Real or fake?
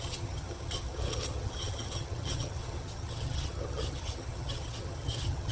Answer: fake